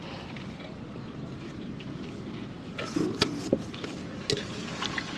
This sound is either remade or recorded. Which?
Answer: recorded